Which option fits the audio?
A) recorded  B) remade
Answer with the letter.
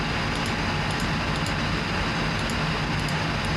A